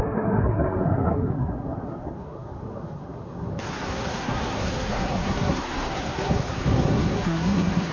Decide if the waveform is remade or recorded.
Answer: remade